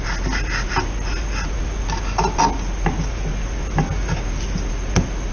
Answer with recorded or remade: recorded